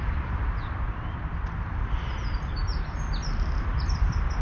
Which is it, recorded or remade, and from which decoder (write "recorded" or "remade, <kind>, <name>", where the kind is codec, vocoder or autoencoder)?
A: remade, vocoder, BigVGAN v2